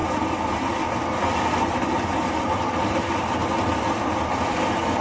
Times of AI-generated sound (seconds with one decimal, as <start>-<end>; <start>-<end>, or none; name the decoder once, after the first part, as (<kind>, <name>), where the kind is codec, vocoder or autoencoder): none